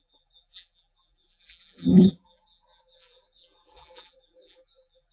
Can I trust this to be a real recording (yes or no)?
no